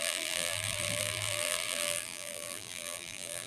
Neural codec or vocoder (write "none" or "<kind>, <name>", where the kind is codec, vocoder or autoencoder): vocoder, BigVGAN v2